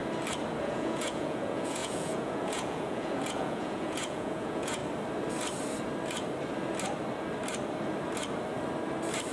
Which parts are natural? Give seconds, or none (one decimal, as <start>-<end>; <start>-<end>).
0.0-0.6; 4.8-9.3